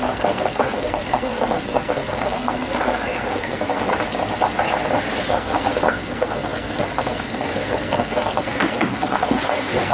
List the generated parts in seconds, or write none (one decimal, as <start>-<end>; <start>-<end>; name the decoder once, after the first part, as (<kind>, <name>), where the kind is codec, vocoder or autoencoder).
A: 0.0-3.9 (codec, SNAC); 5.3-9.9